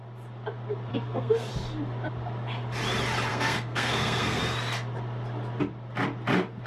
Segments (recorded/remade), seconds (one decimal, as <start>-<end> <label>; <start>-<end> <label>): 0.0-0.9 recorded; 0.9-1.5 remade; 1.5-3.3 recorded; 3.3-4.4 remade; 4.4-6.7 recorded